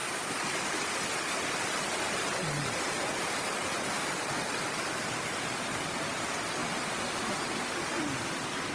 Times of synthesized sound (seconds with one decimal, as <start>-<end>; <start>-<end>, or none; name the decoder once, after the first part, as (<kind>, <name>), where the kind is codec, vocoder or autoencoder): none